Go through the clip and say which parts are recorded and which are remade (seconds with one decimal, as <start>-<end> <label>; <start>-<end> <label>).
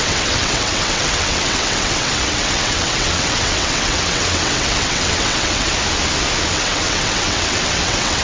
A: 0.0-5.7 remade; 5.7-6.5 recorded; 6.5-8.2 remade